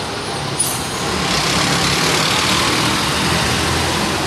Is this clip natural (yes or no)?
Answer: yes